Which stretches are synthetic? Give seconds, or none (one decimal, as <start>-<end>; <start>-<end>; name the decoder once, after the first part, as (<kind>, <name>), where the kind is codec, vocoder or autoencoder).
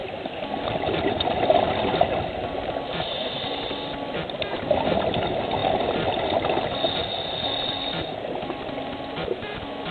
none